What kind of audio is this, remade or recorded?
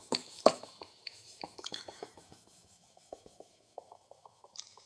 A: remade